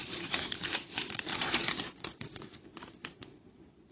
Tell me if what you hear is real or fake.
fake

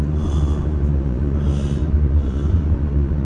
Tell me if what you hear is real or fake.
fake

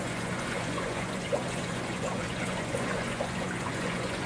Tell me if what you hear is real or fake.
fake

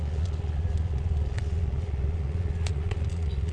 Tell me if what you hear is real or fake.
fake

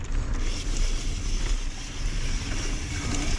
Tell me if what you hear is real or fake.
real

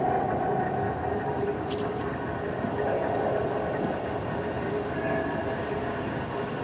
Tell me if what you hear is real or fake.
real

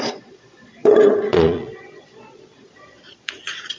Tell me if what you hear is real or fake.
fake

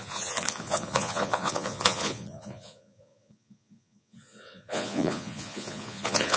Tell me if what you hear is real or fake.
fake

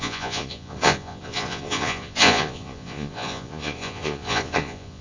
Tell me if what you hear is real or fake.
fake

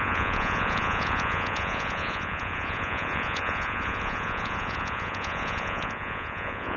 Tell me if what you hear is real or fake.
fake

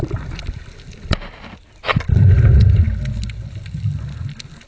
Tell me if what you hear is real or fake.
real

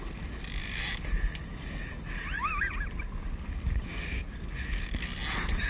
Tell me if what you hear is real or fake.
real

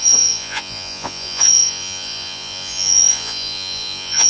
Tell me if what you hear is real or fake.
fake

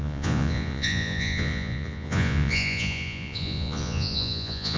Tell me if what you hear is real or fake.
fake